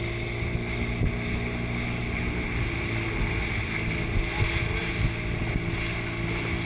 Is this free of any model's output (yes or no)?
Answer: yes